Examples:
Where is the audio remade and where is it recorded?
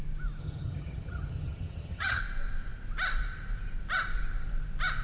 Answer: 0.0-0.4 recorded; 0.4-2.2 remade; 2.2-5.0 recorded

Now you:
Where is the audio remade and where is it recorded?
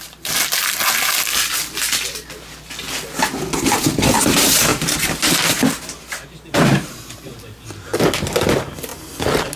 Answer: 0.0-4.7 recorded; 4.7-5.4 remade; 5.4-9.6 recorded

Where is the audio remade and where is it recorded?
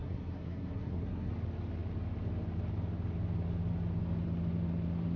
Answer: 0.0-1.3 remade; 1.3-5.2 recorded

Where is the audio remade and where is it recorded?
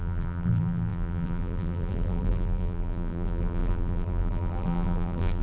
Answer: 0.0-5.4 remade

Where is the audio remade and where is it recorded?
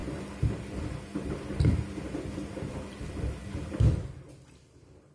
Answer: 0.0-5.1 recorded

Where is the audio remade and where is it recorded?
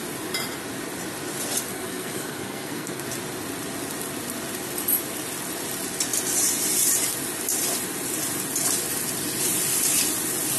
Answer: 0.0-1.7 recorded; 1.7-3.0 remade; 3.0-10.6 recorded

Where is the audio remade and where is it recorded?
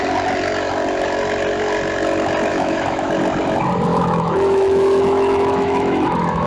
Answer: 0.0-2.5 recorded; 2.5-3.1 remade; 3.1-3.9 recorded; 3.9-6.5 remade